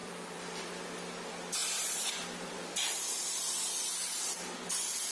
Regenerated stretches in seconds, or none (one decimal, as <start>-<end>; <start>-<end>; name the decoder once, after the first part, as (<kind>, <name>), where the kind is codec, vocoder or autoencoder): 0.0-0.8 (vocoder, BigVGAN v2); 1.6-5.1